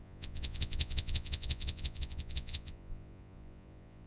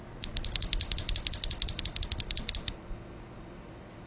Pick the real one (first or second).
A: second